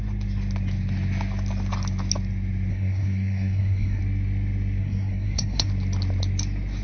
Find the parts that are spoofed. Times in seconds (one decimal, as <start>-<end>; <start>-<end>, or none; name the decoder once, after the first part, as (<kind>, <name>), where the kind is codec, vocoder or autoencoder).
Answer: 2.7-4.0 (codec, SNAC); 4.8-5.7